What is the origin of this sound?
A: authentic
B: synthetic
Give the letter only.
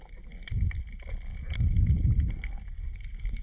A